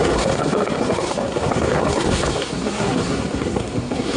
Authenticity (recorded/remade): remade